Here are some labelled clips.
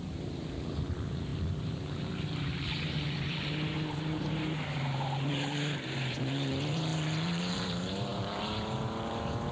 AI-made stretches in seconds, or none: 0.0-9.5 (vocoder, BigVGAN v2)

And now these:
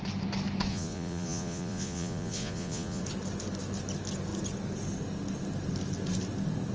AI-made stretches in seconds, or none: 0.7-3.0 (vocoder, Vocos)

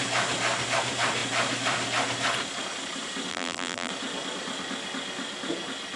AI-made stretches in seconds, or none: 3.3-3.9 (vocoder, BigVGAN v2)

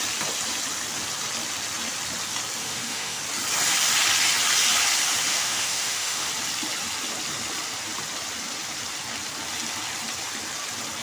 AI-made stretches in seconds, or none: 2.6-3.2 (autoencoder, DAC-VAE); 5.3-6.3